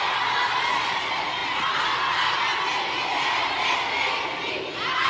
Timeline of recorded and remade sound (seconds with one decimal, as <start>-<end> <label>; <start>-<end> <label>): 0.0-5.1 recorded